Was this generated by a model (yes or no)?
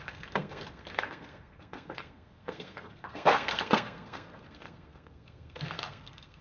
yes